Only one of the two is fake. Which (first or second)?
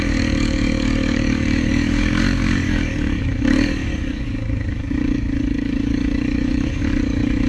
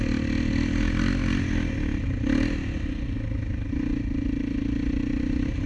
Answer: first